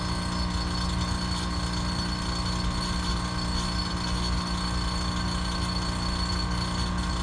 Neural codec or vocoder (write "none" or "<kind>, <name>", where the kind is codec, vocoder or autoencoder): none